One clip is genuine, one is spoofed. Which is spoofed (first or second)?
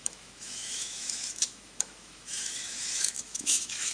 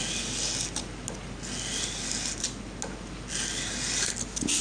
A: first